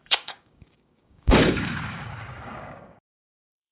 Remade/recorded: remade